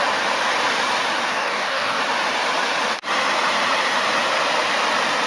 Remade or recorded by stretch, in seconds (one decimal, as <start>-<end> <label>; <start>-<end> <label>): 0.0-1.3 recorded; 1.3-2.0 remade; 2.0-5.3 recorded